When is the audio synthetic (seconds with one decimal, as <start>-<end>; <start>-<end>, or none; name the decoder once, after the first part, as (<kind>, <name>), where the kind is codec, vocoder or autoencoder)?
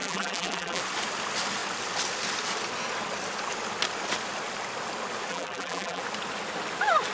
0.0-0.8 (vocoder, BigVGAN v2); 5.3-6.0